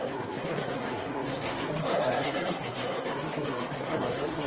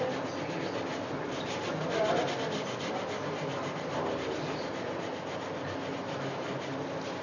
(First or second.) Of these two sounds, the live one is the second